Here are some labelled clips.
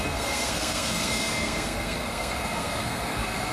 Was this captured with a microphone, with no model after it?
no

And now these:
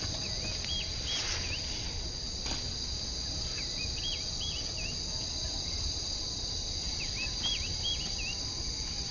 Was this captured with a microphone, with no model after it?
yes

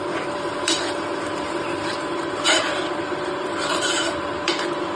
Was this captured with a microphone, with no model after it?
no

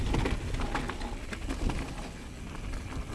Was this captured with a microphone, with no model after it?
yes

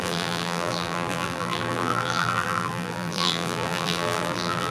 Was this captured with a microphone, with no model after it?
no